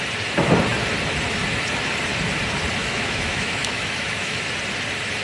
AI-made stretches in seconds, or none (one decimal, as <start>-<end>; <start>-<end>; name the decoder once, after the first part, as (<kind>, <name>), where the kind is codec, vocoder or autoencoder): 2.8-4.4 (autoencoder, DAC-VAE)